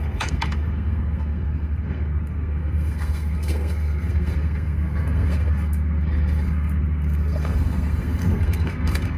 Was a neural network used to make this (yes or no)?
yes